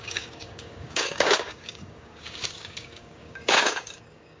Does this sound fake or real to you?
fake